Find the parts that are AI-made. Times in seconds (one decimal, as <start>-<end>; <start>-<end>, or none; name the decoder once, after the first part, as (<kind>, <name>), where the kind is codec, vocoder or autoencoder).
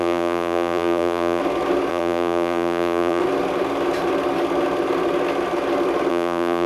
0.0-1.4 (vocoder, BigVGAN v2); 1.9-3.2; 6.1-6.7